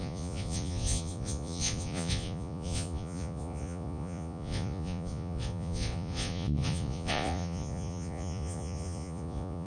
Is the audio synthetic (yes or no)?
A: yes